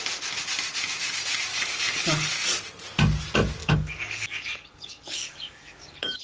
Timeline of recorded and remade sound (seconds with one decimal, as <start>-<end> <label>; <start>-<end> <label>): 0.0-1.5 recorded; 1.5-2.3 remade; 2.3-3.6 recorded; 3.6-6.2 remade